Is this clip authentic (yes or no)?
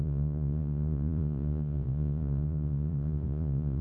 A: no